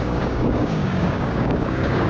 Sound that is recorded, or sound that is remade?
remade